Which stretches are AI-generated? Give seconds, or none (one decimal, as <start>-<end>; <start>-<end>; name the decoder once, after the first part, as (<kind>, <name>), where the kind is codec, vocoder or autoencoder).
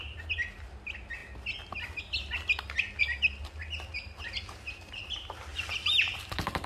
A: 5.5-6.7 (vocoder, BigVGAN v2)